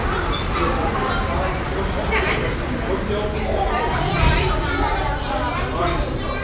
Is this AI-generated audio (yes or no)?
no